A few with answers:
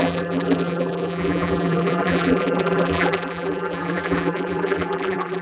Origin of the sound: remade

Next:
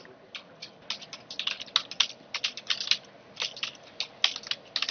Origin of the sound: recorded